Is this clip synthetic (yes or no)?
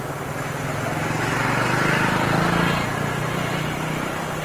no